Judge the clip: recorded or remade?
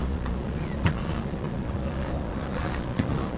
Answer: remade